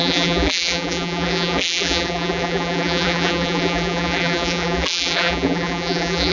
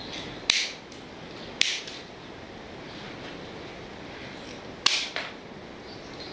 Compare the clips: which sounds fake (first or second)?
first